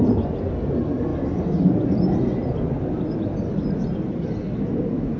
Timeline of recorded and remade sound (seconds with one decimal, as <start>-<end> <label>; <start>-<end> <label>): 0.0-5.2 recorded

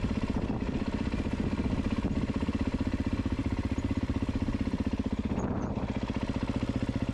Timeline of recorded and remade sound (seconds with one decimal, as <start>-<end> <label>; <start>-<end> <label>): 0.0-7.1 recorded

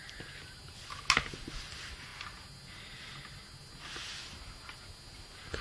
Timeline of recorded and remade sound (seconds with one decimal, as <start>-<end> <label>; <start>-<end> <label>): 0.0-5.6 recorded